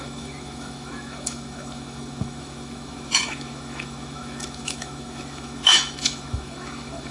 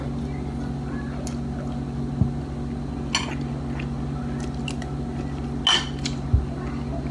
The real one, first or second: second